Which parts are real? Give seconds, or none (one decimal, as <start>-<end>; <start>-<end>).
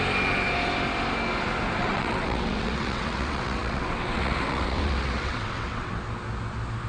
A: 0.0-1.8; 5.9-6.9